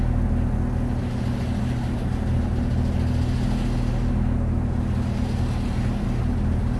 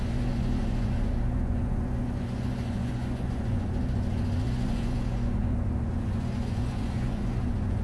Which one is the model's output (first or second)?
second